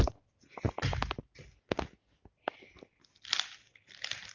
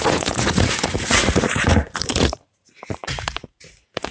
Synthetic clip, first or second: second